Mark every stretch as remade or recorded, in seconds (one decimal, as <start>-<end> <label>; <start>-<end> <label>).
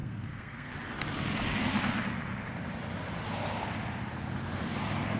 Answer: 0.0-0.7 remade; 0.7-5.2 recorded